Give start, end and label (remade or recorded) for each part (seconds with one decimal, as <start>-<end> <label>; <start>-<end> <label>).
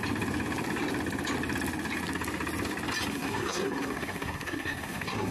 0.0-3.1 recorded; 3.1-5.3 remade